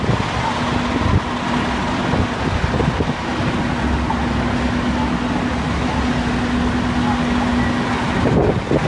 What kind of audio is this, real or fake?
real